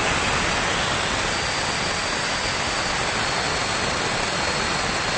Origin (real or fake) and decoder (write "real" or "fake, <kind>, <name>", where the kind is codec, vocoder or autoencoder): real